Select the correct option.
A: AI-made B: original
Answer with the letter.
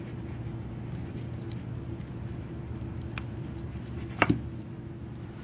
B